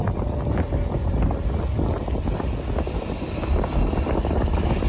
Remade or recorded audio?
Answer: recorded